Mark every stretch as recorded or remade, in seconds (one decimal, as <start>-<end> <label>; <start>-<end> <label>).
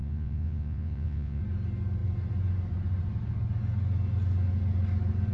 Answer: 0.0-1.4 remade; 1.4-5.3 recorded